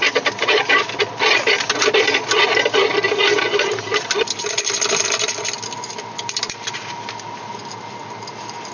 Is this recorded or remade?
recorded